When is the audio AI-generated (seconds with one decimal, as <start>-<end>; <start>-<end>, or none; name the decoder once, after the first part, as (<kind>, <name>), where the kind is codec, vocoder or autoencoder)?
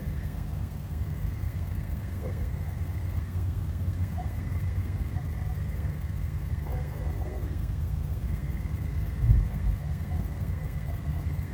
0.0-11.5 (codec, SNAC)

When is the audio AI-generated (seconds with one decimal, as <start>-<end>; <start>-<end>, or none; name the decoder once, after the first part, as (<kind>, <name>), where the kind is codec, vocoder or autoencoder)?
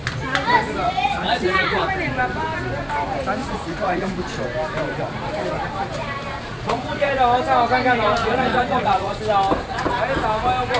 0.8-1.9 (vocoder, Vocos); 3.4-4.0; 6.5-7.1; 8.2-9.2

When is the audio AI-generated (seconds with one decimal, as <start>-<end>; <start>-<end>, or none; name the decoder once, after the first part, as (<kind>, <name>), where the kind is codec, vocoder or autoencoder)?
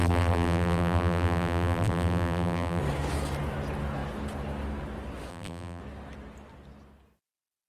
0.0-2.8 (vocoder, BigVGAN v2); 5.3-5.8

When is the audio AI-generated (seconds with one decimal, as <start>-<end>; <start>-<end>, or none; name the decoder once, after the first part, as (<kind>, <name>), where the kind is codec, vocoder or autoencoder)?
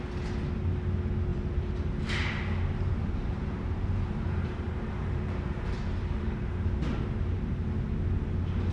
1.3-6.5 (vocoder, BigVGAN v2)